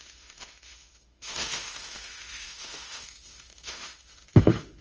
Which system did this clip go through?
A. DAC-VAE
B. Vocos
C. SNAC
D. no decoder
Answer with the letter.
A